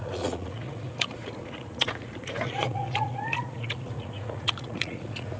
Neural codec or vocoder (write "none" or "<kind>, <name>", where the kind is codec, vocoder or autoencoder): vocoder, Vocos